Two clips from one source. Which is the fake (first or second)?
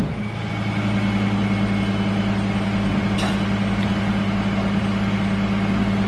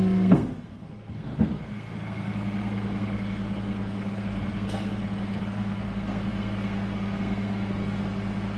second